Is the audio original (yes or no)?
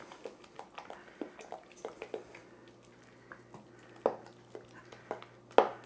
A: yes